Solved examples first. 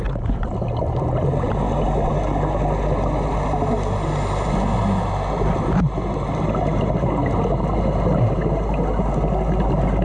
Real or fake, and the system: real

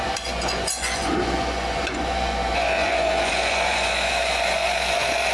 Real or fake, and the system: fake, vocoder, Vocos